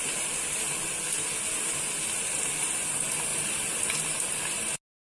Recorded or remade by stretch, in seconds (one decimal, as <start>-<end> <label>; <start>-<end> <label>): 0.0-5.1 recorded